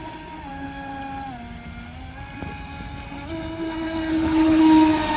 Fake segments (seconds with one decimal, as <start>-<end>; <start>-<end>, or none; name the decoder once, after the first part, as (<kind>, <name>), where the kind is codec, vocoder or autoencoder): 4.1-4.6 (codec, HILCodec)